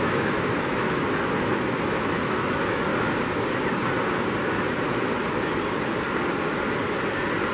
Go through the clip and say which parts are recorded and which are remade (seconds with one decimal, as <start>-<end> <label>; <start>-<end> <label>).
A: 0.0-2.9 remade; 2.9-4.4 recorded; 4.4-5.1 remade; 5.1-7.5 recorded